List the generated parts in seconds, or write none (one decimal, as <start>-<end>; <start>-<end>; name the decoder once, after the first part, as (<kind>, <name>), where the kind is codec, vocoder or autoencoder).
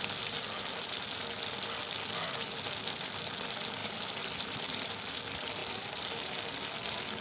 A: 3.8-4.9 (vocoder, BigVGAN v2); 5.6-6.2